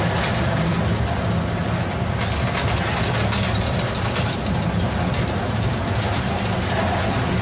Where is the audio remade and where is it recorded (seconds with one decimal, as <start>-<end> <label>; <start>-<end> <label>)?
0.0-7.4 recorded